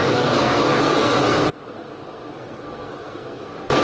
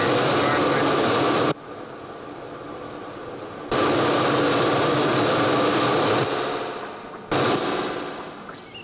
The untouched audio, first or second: second